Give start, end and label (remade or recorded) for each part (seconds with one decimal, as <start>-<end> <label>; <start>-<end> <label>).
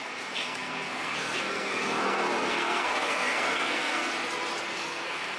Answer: 0.0-4.1 remade; 4.1-4.7 recorded; 4.7-5.4 remade